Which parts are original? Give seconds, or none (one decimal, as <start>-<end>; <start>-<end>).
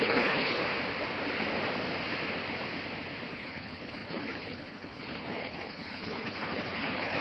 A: 0.6-3.3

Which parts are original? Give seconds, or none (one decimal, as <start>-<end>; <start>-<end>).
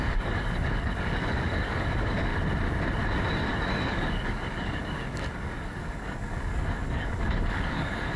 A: 2.3-3.5